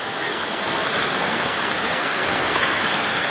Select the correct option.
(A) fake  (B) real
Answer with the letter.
A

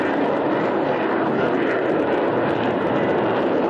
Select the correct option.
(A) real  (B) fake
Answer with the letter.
A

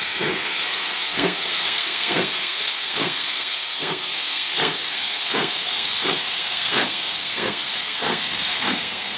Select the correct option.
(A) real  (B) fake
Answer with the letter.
B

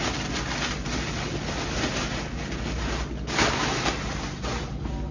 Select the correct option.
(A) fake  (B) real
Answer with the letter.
B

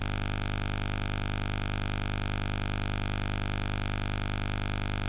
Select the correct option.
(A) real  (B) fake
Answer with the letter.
A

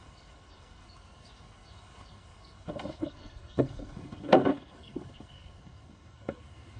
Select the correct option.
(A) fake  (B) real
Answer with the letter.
A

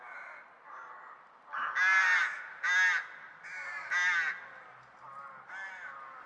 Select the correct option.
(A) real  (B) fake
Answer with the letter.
A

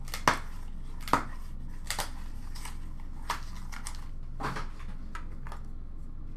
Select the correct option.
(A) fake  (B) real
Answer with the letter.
B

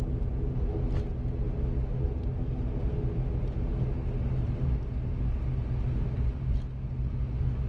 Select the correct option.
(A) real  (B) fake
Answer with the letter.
A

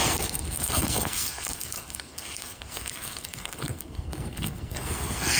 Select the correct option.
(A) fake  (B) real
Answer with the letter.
A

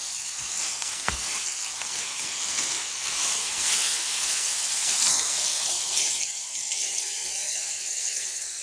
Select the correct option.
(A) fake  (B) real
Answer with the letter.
A